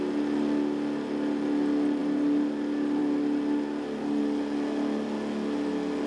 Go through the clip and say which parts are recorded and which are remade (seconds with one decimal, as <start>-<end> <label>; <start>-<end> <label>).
0.0-6.1 recorded

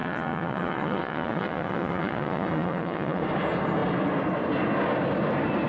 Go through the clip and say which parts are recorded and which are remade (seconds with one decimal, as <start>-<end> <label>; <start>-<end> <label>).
0.0-3.2 remade; 3.2-5.7 recorded